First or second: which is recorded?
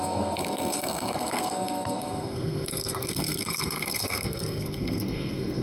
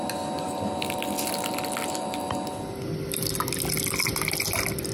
second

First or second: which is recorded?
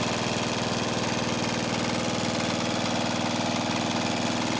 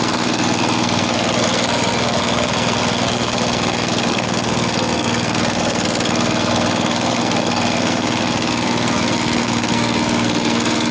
first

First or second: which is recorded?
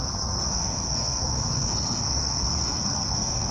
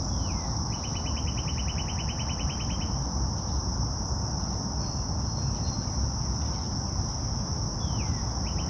second